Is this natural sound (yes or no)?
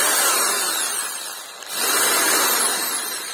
yes